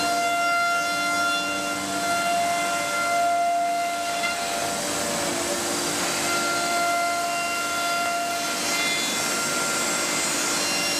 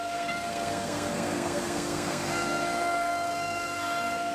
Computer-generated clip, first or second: second